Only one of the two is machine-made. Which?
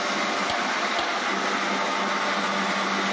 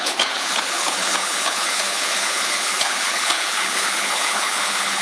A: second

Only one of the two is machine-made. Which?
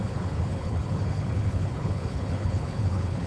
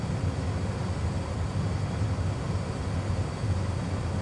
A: first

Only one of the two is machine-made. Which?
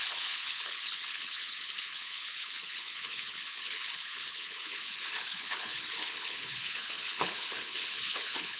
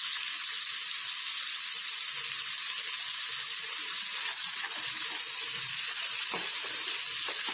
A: first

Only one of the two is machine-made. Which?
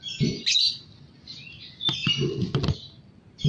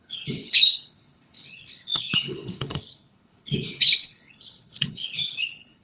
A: second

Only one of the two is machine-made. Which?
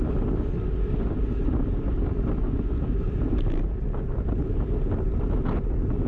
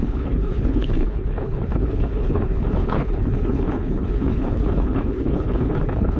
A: second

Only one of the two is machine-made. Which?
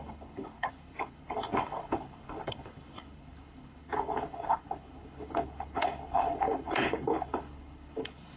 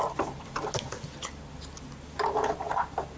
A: first